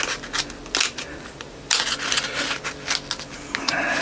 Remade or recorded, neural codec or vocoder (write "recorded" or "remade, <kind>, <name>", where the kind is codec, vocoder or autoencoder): recorded